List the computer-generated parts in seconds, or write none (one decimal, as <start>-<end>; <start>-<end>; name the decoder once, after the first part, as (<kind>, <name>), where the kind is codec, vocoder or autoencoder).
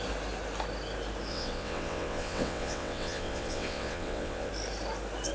1.3-4.5 (vocoder, WaveNeXt)